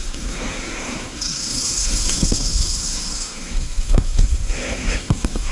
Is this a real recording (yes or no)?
no